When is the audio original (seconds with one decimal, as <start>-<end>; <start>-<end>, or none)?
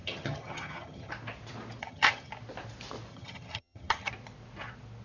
1.1-1.8; 2.3-3.1; 4.1-5.0